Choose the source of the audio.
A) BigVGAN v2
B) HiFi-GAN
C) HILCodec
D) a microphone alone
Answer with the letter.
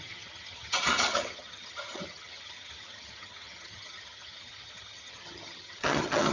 B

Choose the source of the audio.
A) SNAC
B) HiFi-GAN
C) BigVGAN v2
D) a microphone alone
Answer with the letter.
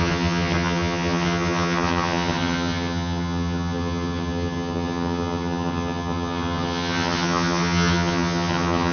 B